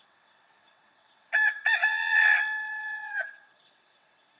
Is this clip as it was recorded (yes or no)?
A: no